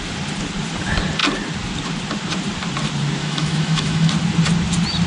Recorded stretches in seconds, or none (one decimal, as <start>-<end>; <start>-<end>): 0.0-3.2; 4.1-5.1